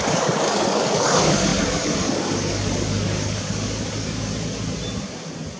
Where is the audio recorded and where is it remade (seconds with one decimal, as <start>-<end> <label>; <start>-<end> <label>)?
0.0-4.3 remade; 4.3-5.6 recorded

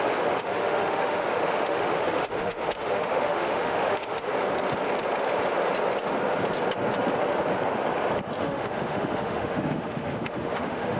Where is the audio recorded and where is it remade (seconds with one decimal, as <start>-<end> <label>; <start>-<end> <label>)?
0.0-4.3 remade; 4.3-8.4 recorded; 8.4-11.0 remade

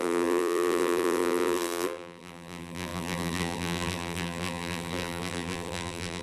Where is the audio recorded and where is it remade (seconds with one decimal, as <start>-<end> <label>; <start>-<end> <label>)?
0.0-6.2 remade

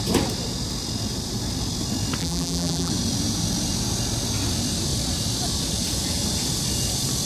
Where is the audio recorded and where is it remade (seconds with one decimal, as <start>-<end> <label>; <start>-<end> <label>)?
0.0-2.2 recorded; 2.2-2.9 remade; 2.9-7.3 recorded

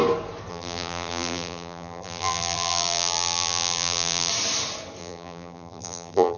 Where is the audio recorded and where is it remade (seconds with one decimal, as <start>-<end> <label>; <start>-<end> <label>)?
0.0-0.5 recorded; 0.5-4.3 remade; 4.3-5.0 recorded; 5.0-6.4 remade

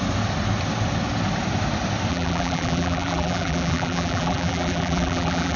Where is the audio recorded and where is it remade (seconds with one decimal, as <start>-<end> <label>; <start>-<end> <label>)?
0.0-2.1 recorded; 2.1-5.6 remade

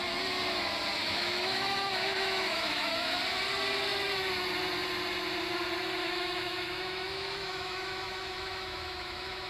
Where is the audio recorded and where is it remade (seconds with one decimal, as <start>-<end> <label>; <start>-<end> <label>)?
0.0-1.0 recorded; 1.0-3.2 remade; 3.2-6.0 recorded; 6.0-9.5 remade